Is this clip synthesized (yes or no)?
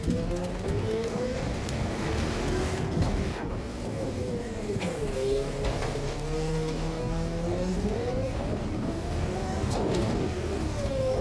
yes